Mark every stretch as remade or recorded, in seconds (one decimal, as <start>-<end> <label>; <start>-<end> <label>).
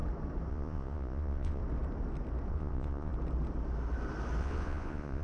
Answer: 0.0-0.5 recorded; 0.5-1.6 remade; 1.6-2.5 recorded; 2.5-3.1 remade; 3.1-4.4 recorded; 4.4-5.2 remade